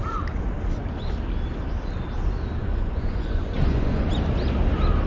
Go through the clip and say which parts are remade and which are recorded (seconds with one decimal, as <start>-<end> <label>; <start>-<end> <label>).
0.0-2.6 recorded; 2.6-4.1 remade; 4.1-5.1 recorded